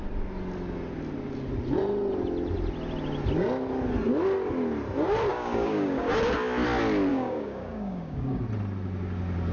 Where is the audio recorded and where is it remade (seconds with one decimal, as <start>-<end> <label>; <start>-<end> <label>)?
0.0-5.3 recorded; 5.3-6.2 remade; 6.2-7.1 recorded; 7.1-8.4 remade; 8.4-9.5 recorded